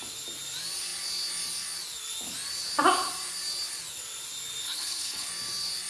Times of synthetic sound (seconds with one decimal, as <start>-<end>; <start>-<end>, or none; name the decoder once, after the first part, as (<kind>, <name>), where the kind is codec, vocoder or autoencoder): 4.6-5.3 (codec, HILCodec)

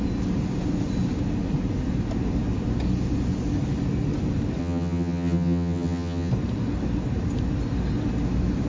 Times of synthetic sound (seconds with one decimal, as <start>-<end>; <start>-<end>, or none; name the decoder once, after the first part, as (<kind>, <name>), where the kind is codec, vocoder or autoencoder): 4.6-6.3 (vocoder, HiFi-GAN)

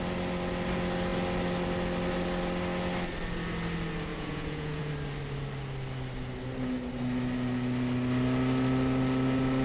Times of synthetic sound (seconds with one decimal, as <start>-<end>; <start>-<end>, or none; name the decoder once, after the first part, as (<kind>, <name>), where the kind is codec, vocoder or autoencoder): 4.1-4.9 (vocoder, Vocos)

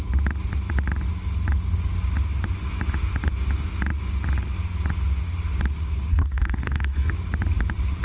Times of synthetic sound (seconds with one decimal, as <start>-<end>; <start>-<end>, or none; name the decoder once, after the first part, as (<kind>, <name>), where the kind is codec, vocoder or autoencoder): 6.1-7.1 (codec, SNAC)

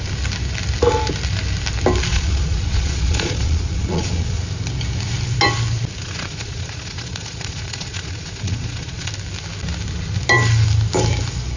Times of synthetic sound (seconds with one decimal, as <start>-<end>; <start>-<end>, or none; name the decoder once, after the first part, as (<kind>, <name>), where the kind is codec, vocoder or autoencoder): 2.1-4.4 (vocoder, Vocos); 6.0-9.1

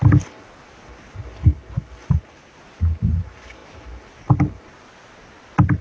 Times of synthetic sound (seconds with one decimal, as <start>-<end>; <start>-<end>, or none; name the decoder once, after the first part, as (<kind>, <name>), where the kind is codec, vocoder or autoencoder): none